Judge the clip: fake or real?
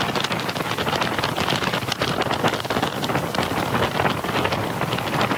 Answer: real